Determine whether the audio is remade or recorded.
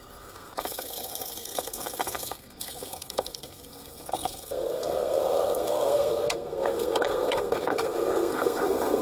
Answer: remade